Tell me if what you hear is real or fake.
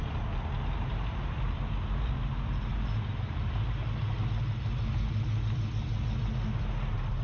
real